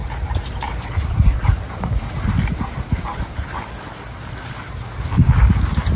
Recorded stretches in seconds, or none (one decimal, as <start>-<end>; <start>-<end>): 0.0-6.0